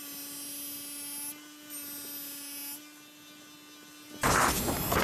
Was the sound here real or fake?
real